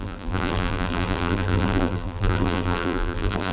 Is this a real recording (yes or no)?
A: no